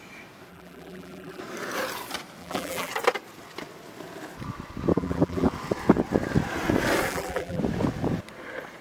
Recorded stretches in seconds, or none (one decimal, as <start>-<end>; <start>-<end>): 0.0-0.5; 1.4-2.4; 2.9-4.9; 5.5-7.1; 7.6-8.8